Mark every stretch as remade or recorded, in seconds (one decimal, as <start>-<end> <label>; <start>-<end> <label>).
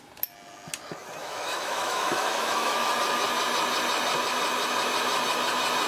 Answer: 0.0-1.2 recorded; 1.2-2.9 remade; 2.9-5.9 recorded